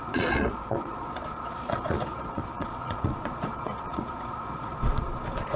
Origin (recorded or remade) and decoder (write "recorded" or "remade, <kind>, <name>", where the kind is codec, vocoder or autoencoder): remade, vocoder, Vocos